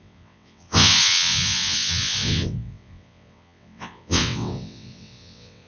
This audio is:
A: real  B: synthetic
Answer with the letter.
B